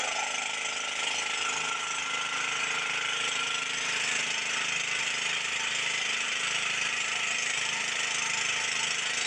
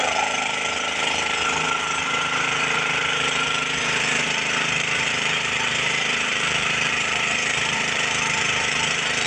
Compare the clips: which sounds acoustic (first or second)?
first